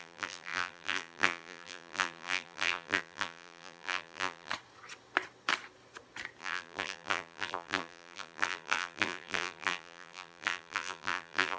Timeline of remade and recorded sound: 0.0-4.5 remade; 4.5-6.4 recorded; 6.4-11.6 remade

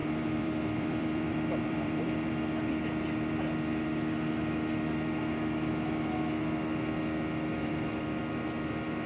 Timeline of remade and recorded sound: 0.0-2.3 remade; 2.3-7.6 recorded; 7.6-8.2 remade; 8.2-9.1 recorded